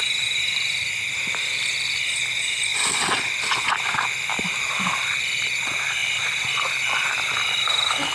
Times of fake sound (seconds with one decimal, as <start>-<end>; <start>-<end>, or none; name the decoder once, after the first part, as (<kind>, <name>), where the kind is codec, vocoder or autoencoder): 0.8-1.6 (vocoder, BigVGAN v2); 6.0-6.7